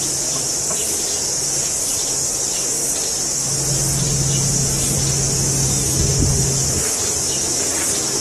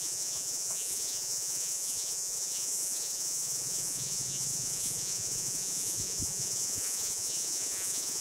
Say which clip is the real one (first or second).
first